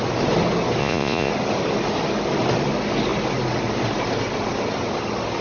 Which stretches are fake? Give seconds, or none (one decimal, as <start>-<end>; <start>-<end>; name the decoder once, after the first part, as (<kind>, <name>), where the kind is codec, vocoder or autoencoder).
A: 0.8-1.3 (vocoder, Vocos)